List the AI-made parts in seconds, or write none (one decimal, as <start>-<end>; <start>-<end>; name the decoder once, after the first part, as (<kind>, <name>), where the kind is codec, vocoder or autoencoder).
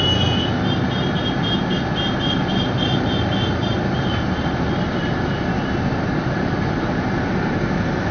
none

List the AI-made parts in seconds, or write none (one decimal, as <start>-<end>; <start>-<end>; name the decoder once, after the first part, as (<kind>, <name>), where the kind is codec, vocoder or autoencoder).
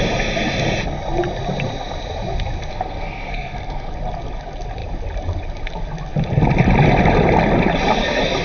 2.7-3.9 (codec, SNAC)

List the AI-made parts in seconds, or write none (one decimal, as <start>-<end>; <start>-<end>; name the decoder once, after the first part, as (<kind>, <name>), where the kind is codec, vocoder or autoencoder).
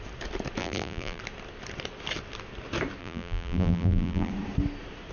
0.6-1.2 (vocoder, BigVGAN v2); 3.0-4.3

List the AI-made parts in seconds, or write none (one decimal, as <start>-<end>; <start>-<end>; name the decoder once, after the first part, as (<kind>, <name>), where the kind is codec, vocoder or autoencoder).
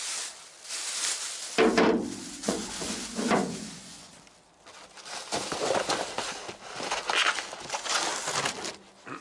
2.4-4.1 (vocoder, Vocos)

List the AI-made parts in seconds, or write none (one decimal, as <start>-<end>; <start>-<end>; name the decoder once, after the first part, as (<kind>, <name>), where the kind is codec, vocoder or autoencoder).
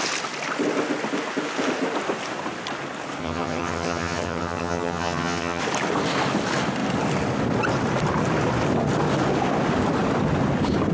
3.2-5.6 (vocoder, HiFi-GAN)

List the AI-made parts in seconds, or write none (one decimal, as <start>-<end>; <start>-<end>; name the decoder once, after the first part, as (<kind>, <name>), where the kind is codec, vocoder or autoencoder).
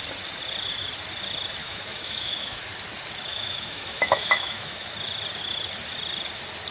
1.6-2.6 (autoencoder, DAC-VAE); 3.3-4.9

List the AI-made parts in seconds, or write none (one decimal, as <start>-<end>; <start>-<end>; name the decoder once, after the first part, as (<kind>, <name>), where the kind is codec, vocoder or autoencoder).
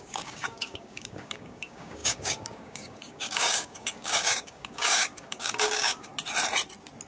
0.0-6.1 (codec, DAC)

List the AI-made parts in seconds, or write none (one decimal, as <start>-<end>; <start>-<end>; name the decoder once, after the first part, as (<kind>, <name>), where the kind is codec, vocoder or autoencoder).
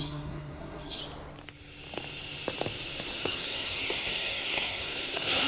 0.0-1.0 (codec, SNAC); 3.2-5.5